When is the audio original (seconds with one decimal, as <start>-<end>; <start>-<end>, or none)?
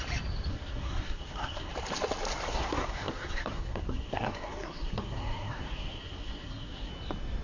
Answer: 0.0-0.5; 1.7-2.5; 6.9-7.4